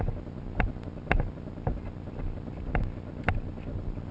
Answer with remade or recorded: recorded